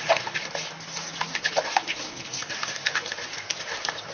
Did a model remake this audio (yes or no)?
no